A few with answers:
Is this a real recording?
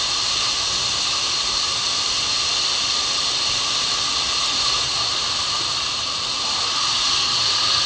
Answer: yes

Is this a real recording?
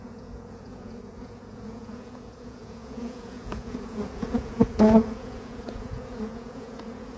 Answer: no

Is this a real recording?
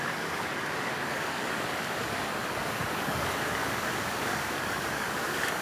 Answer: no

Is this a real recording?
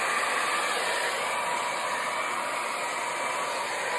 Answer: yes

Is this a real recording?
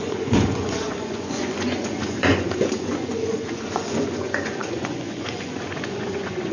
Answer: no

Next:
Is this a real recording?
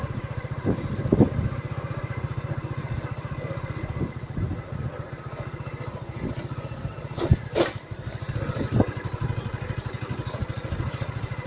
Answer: yes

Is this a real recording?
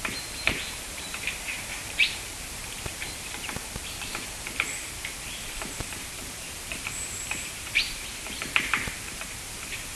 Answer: no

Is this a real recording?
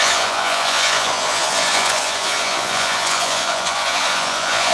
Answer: no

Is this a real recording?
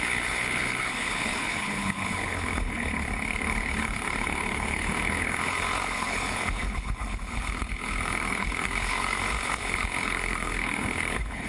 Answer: no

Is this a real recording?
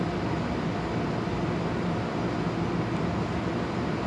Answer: yes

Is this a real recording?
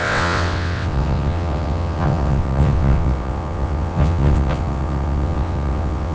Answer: no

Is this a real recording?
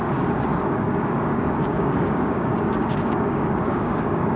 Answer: no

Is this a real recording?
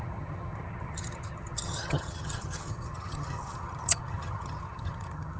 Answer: no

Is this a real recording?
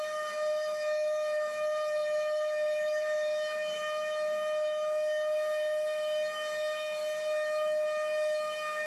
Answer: no